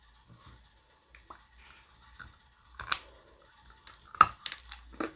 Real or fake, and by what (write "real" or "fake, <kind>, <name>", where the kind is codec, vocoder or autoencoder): real